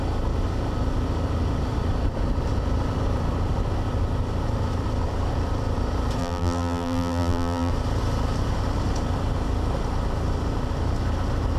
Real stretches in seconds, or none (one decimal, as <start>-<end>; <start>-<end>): 0.0-6.2; 7.7-11.6